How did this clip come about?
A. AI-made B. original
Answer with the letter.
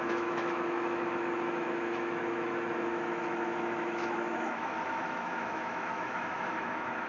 A